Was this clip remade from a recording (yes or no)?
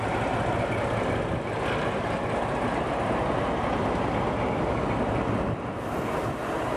no